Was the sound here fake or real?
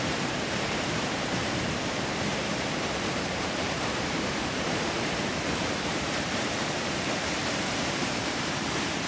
fake